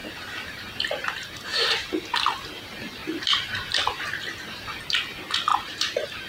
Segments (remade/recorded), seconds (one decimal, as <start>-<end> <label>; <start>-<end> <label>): 0.0-1.9 remade; 1.9-3.0 recorded; 3.0-5.0 remade; 5.0-5.5 recorded; 5.5-6.3 remade